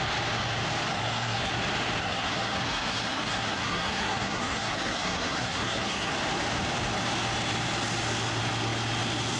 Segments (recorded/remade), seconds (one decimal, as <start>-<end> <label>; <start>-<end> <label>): 0.0-0.9 recorded; 0.9-1.5 remade; 1.5-2.0 recorded; 2.0-6.1 remade; 6.1-9.4 recorded

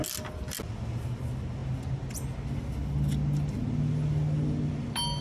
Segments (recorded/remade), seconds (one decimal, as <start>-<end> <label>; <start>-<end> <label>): 0.0-5.2 recorded